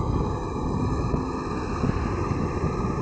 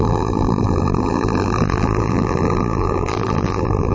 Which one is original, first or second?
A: first